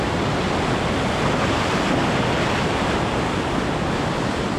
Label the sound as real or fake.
real